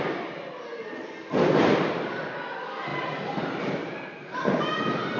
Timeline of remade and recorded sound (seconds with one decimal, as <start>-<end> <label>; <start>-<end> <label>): 0.0-5.2 recorded

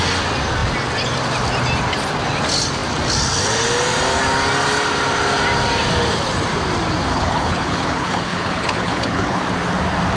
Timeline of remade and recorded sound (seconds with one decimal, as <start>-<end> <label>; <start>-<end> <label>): 0.0-7.1 recorded; 7.1-9.4 remade; 9.4-10.2 recorded

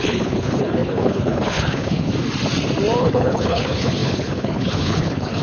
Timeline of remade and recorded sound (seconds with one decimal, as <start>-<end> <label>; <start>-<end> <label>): 0.0-2.1 remade; 2.1-3.0 recorded; 3.0-5.4 remade

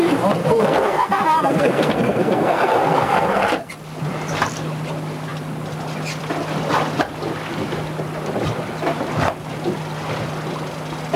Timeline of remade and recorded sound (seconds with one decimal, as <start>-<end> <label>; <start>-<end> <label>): 0.0-0.4 recorded; 0.4-3.7 remade; 3.7-11.2 recorded

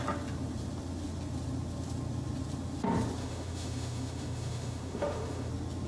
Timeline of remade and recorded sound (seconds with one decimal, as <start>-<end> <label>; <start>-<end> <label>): 0.0-3.2 recorded; 3.2-5.5 remade; 5.5-5.9 recorded

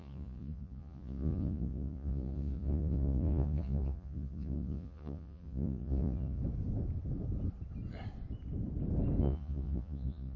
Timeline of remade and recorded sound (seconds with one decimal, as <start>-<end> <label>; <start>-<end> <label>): 0.0-6.4 remade; 6.4-9.2 recorded; 9.2-10.4 remade

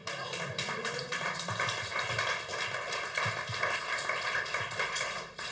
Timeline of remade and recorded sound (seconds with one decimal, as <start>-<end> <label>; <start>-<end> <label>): 0.0-0.8 recorded; 0.8-1.9 remade; 1.9-4.4 recorded; 4.4-5.5 remade

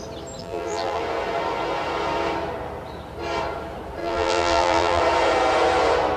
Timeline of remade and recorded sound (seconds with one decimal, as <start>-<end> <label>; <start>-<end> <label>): 0.0-0.4 recorded; 0.4-1.0 remade; 1.0-4.0 recorded; 4.0-5.0 remade; 5.0-6.2 recorded